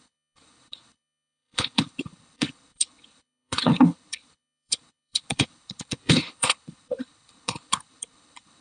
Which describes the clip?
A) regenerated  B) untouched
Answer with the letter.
A